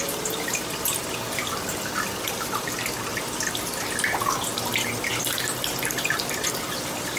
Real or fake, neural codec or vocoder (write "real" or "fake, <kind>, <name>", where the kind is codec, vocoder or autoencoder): real